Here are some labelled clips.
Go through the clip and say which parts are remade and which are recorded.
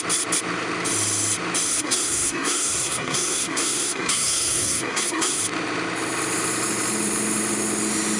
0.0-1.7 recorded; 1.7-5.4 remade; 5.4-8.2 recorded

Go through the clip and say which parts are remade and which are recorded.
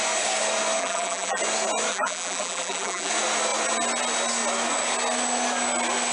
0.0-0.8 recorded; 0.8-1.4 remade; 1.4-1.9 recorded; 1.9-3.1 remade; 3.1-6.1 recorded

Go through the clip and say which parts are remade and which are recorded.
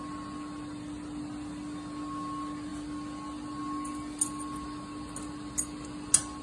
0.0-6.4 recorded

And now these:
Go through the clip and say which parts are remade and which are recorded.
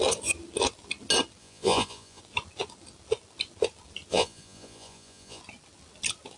0.0-1.4 recorded; 1.4-2.2 remade; 2.2-4.1 recorded; 4.1-5.4 remade; 5.4-6.4 recorded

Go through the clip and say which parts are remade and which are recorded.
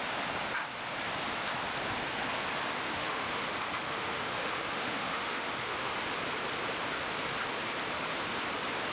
0.0-2.8 recorded; 2.8-3.4 remade; 3.4-3.8 recorded; 3.8-5.9 remade; 5.9-8.9 recorded